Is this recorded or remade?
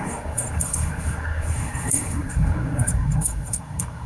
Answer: remade